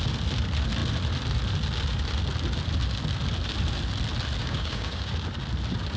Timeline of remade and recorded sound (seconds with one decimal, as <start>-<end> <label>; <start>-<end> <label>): 0.0-4.4 recorded; 4.4-5.1 remade; 5.1-6.0 recorded